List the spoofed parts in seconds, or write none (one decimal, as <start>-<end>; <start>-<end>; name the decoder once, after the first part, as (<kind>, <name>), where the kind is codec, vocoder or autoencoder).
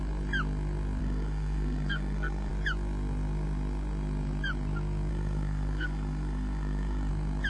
1.0-2.5 (codec, SNAC); 5.1-7.1